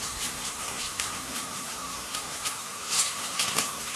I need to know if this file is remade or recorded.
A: remade